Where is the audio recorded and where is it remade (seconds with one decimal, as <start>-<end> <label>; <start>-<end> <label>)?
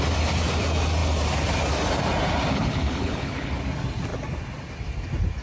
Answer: 0.0-2.5 recorded; 2.5-3.5 remade; 3.5-5.4 recorded